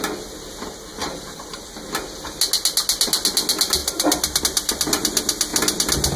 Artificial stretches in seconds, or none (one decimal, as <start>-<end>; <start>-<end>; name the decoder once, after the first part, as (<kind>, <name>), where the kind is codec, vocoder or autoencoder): 1.0-1.5 (vocoder, BigVGAN v2)